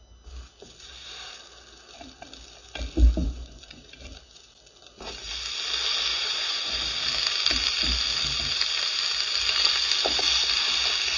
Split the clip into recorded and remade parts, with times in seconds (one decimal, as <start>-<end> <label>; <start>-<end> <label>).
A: 0.0-3.2 recorded; 3.2-3.8 remade; 3.8-6.1 recorded; 6.1-6.8 remade; 6.8-11.2 recorded